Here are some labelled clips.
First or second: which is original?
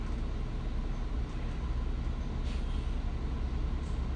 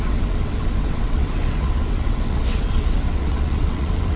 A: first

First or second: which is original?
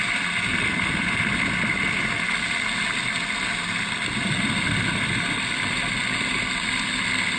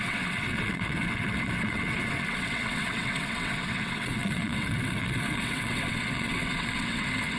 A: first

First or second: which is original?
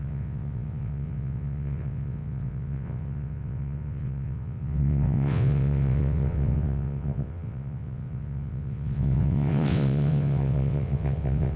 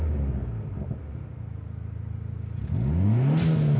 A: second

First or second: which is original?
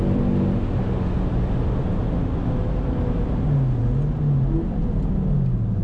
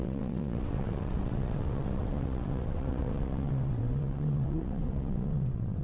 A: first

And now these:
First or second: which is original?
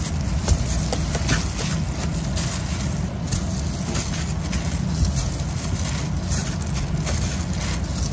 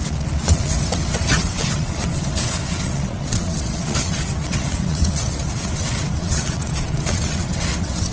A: first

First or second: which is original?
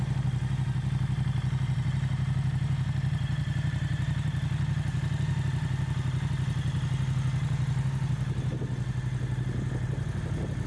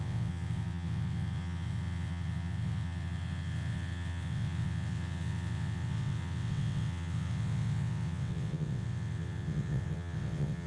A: first